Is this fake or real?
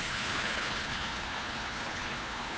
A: fake